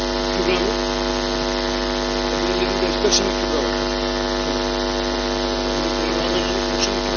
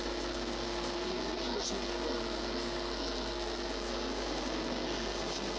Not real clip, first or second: second